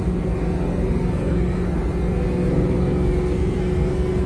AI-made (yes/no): yes